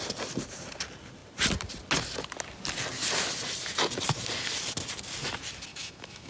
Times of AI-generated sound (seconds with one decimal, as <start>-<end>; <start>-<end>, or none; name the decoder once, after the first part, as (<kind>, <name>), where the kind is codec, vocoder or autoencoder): 5.7-6.3 (autoencoder, DAC-VAE)